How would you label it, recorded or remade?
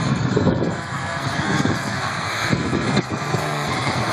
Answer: remade